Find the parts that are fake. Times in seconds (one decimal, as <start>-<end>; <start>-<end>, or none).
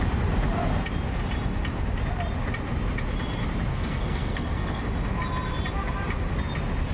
3.7-4.8